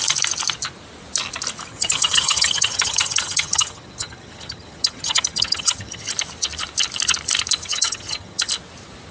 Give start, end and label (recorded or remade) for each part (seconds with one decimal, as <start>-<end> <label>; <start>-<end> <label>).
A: 0.0-1.7 recorded; 1.7-6.0 remade; 6.0-7.7 recorded; 7.7-8.5 remade; 8.5-9.1 recorded